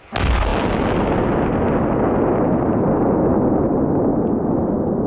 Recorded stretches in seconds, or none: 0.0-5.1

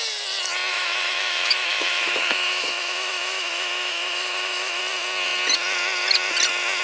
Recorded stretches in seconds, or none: 0.0-0.7; 4.8-6.8

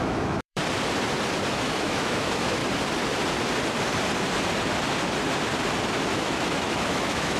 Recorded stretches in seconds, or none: 0.6-1.5; 2.6-6.1

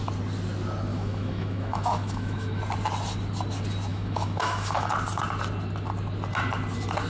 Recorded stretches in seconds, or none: 0.0-0.9; 2.6-3.9; 4.9-7.1

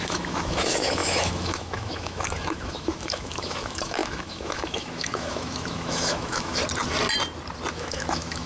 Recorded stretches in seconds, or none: 6.6-7.7

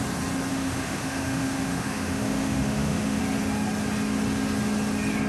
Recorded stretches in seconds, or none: 0.0-0.5; 3.2-5.3

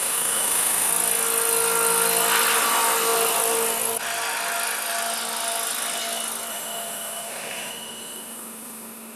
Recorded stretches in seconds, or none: 0.9-6.5

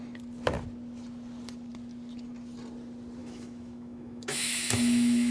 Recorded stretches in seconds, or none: 0.0-3.2